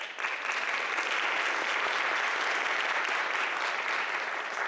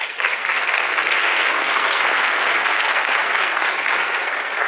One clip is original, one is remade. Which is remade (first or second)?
second